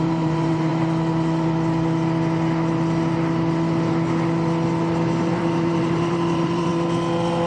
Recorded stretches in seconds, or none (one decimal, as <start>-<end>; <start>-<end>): 0.7-5.2; 6.7-7.5